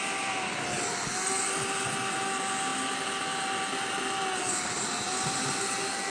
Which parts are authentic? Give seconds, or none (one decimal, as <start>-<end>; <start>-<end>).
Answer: 0.0-6.1